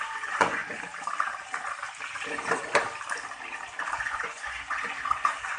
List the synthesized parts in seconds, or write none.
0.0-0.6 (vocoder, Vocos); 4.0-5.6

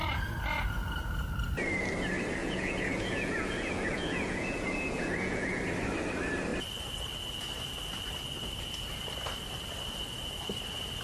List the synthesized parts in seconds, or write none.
2.4-5.6 (vocoder, Vocos)

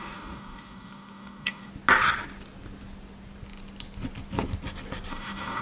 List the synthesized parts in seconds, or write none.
0.0-1.7 (codec, DAC); 5.1-5.6

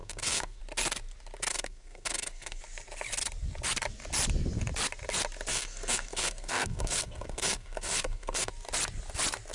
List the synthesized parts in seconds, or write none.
0.0-0.6 (codec, SNAC); 1.5-2.6; 5.5-8.5

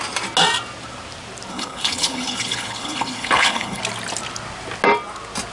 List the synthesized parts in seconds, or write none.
1.5-3.8 (codec, HILCodec)

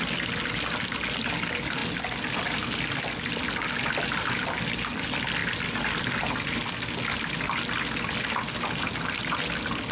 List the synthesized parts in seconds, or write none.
none